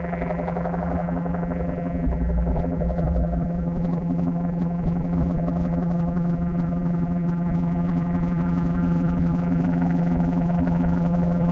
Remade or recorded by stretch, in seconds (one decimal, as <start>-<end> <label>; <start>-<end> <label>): 0.0-11.5 remade